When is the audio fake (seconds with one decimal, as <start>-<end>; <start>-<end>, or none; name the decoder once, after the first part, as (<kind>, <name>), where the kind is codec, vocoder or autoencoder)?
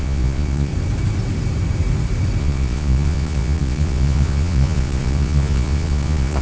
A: 0.0-0.7 (vocoder, Vocos); 2.4-6.4